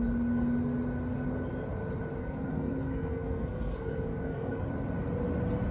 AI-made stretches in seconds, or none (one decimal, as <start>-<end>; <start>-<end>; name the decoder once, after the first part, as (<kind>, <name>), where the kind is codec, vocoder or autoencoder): 2.2-4.6 (codec, SNAC)